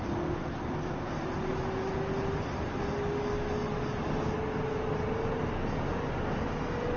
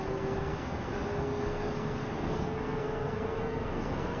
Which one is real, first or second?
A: first